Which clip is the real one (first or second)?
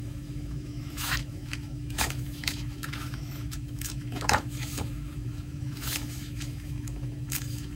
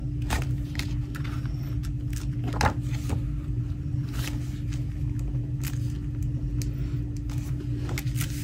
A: second